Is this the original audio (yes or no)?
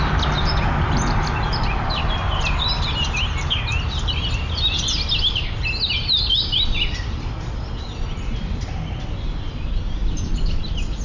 yes